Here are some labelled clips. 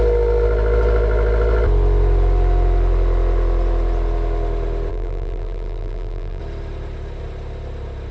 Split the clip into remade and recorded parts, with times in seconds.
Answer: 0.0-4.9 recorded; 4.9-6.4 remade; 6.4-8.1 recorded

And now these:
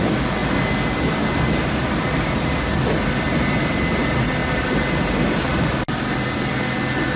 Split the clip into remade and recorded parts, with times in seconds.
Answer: 0.0-4.4 recorded; 4.4-5.6 remade; 5.6-7.2 recorded

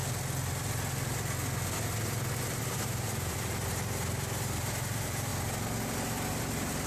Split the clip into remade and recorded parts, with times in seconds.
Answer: 0.0-2.4 recorded; 2.4-5.3 remade; 5.3-6.3 recorded; 6.3-6.9 remade

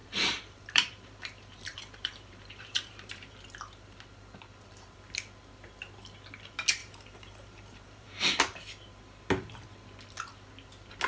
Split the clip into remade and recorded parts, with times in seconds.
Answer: 0.0-3.4 remade; 3.4-6.8 recorded; 6.8-8.3 remade; 8.3-11.1 recorded

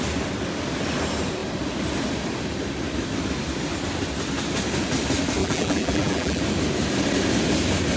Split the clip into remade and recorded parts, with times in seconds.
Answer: 0.0-5.4 recorded; 5.4-6.4 remade; 6.4-8.0 recorded

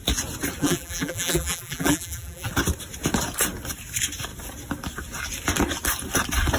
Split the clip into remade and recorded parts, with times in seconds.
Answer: 0.0-0.6 recorded; 0.6-2.5 remade; 2.5-6.6 recorded